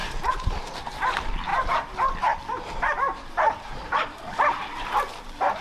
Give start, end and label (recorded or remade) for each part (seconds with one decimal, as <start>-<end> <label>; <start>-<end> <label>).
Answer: 0.0-0.7 recorded; 0.7-5.6 remade